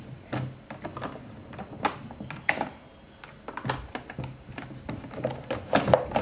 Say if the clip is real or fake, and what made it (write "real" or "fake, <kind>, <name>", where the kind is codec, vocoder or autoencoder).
real